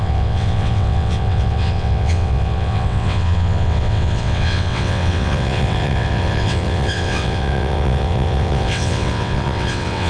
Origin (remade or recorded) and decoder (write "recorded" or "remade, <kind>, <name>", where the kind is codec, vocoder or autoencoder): remade, vocoder, WaveNeXt